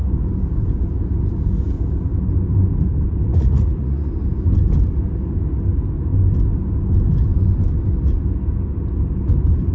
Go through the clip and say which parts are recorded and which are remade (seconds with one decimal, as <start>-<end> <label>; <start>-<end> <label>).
0.0-3.3 recorded; 3.3-4.1 remade; 4.1-9.7 recorded